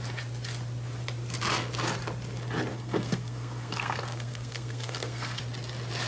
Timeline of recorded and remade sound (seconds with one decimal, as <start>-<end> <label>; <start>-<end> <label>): 0.0-2.7 recorded; 2.7-5.4 remade; 5.4-6.1 recorded